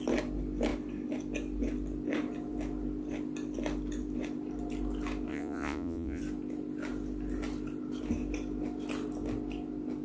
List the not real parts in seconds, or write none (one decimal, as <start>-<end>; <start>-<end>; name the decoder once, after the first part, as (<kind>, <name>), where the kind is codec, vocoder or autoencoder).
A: 5.3-6.2 (vocoder, Vocos)

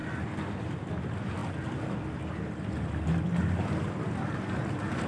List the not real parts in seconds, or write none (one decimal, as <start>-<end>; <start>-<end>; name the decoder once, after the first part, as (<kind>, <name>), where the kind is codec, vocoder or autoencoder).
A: none

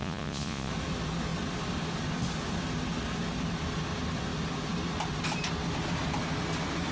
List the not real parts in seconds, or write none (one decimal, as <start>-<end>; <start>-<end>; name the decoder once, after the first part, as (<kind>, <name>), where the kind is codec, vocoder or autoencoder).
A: 0.0-0.7 (vocoder, Vocos)